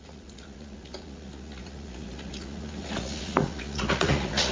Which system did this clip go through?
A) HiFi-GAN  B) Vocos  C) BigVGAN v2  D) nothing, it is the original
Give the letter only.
B